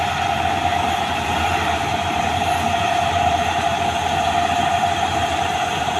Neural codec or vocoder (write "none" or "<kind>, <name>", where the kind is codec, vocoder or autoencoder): vocoder, BigVGAN v2